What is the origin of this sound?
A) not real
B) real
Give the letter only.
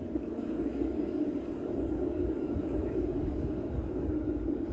A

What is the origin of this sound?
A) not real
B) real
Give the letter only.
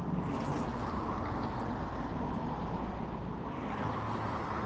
B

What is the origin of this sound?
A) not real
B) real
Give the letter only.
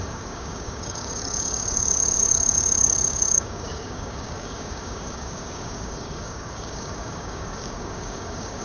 A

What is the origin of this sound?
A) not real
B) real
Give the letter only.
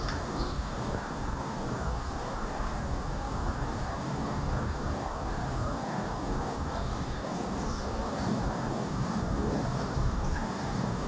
A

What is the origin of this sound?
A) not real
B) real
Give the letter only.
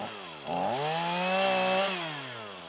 B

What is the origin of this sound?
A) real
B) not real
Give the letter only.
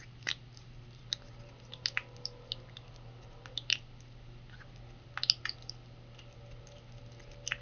A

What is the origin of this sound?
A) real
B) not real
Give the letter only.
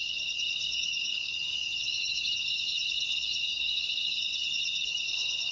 B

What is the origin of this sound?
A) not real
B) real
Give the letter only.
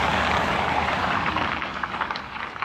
A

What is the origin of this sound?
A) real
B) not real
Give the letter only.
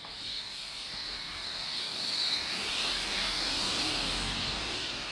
B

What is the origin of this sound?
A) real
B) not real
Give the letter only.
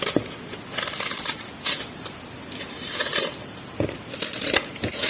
A